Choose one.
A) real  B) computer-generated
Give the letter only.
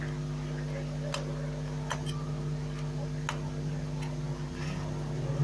A